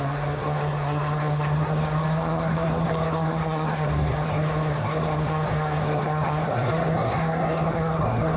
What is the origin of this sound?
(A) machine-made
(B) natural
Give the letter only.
A